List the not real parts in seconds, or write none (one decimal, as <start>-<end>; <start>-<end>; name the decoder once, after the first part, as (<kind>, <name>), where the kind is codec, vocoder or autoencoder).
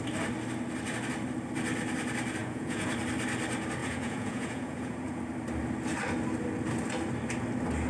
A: 2.4-2.9 (vocoder, Vocos); 3.8-5.2